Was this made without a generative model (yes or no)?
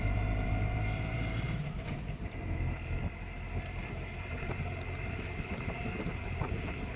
no